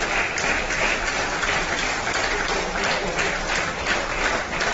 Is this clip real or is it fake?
fake